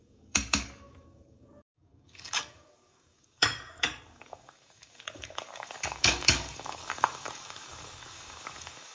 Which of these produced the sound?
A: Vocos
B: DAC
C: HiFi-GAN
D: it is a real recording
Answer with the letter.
B